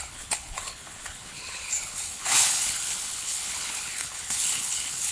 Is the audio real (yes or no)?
no